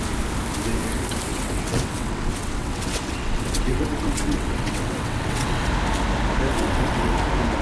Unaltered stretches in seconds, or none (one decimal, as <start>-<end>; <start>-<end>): 0.0-1.3; 5.7-6.5; 7.1-7.6